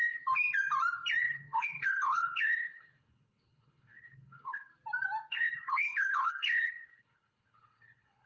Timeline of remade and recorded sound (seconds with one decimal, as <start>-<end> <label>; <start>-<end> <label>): 0.0-1.2 recorded; 1.2-4.7 remade; 4.7-5.3 recorded; 5.3-8.3 remade